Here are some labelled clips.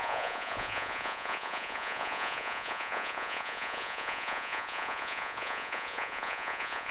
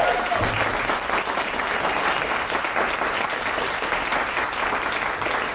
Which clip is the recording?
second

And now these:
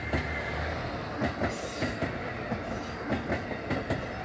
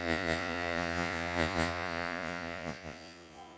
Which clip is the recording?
first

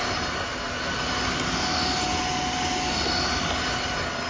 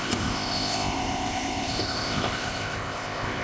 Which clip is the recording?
first